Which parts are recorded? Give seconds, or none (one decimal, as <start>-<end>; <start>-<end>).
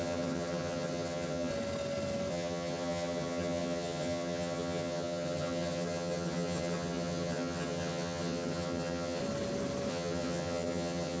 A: 1.5-2.3; 9.2-9.9